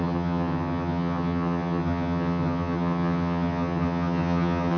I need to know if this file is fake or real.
fake